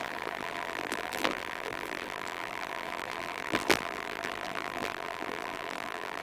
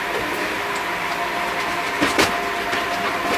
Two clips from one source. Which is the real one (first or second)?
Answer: second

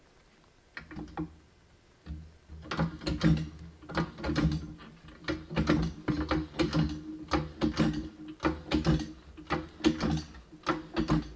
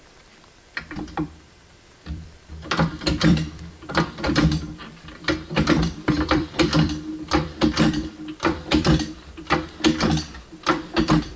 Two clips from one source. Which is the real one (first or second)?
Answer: first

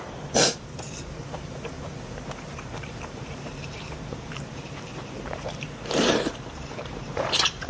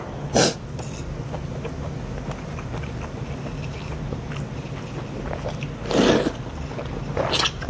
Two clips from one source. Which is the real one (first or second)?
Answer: second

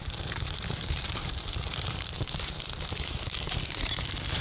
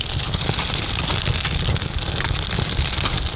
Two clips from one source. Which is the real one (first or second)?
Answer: second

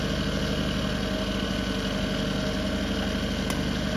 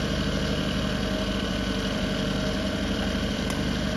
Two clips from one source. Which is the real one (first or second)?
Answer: first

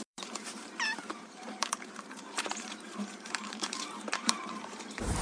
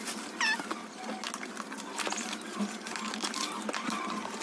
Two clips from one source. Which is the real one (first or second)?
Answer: second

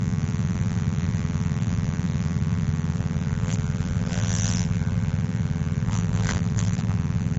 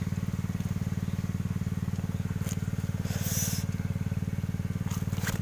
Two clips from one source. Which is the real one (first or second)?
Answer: second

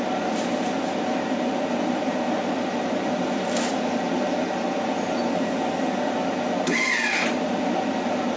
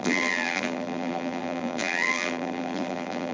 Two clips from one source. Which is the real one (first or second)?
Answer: first